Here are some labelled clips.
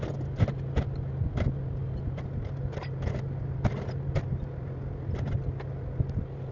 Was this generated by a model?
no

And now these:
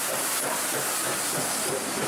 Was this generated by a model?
no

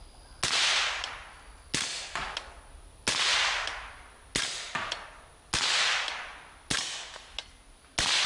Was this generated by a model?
no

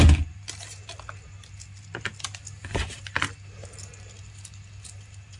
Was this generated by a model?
no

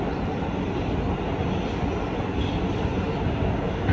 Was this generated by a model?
no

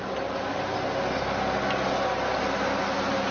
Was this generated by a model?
no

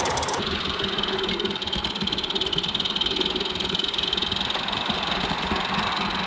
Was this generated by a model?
no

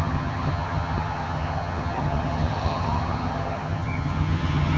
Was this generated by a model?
yes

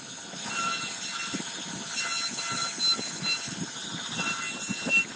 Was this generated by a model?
no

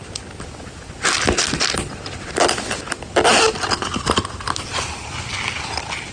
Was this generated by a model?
no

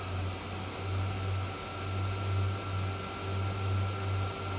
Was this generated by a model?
no